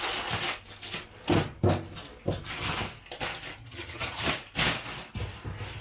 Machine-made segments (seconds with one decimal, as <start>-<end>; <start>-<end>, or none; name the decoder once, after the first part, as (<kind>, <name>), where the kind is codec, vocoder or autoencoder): 3.6-4.3 (vocoder, HiFi-GAN)